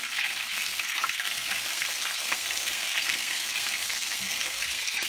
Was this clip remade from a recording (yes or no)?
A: yes